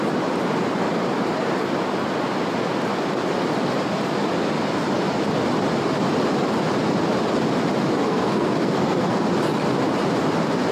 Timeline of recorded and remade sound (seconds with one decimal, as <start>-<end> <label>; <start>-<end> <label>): 0.0-8.0 recorded; 8.0-9.3 remade; 9.3-10.7 recorded